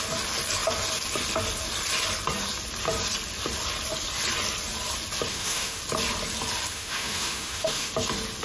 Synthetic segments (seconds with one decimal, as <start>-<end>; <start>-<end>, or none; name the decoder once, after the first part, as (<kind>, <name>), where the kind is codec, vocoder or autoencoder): 5.3-5.8 (autoencoder, DAC-VAE); 6.7-7.9

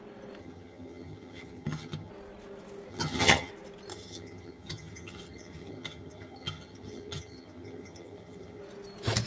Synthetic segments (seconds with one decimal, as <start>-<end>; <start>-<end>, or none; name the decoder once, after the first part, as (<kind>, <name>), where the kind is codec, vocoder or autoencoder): 0.4-2.1 (vocoder, HiFi-GAN); 2.9-3.5; 3.9-8.6

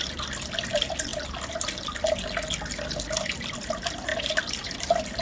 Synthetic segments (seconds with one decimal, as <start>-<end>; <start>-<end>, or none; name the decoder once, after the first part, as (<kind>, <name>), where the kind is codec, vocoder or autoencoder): 0.0-1.1 (vocoder, BigVGAN v2); 3.6-4.1; 4.8-5.2

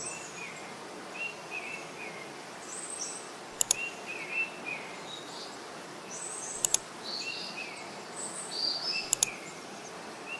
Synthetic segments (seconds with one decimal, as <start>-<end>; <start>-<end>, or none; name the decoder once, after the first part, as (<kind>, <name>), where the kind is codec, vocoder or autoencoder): none

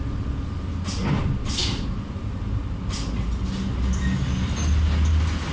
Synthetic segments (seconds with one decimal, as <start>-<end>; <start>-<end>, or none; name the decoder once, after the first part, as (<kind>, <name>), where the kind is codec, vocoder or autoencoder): none

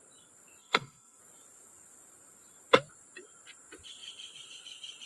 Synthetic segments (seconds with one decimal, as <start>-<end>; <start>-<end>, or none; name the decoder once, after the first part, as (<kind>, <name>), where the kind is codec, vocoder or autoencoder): 0.6-1.2 (codec, SNAC)

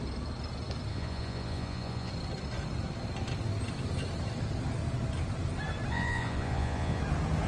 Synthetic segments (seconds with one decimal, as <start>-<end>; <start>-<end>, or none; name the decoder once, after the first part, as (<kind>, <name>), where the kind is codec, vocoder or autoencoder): 0.9-2.1 (vocoder, Vocos); 5.9-7.0